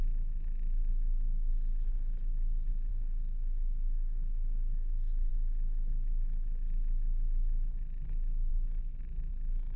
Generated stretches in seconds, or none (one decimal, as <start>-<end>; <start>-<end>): 0.9-1.5; 2.9-5.3